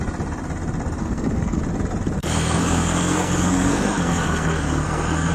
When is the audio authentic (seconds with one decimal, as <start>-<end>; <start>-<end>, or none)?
0.0-1.0; 1.6-2.2

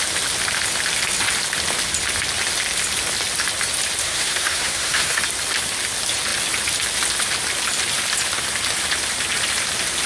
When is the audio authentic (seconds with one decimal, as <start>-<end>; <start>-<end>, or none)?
0.0-4.0; 5.2-10.1